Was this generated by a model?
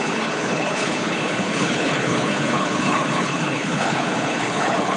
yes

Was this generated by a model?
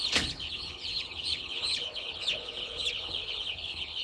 yes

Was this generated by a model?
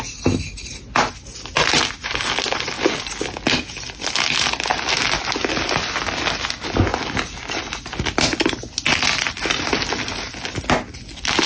no